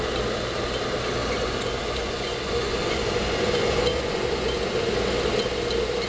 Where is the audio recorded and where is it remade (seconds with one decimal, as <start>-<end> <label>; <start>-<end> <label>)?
0.0-1.2 recorded; 1.2-4.9 remade; 4.9-6.1 recorded